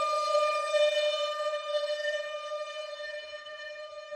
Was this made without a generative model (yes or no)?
no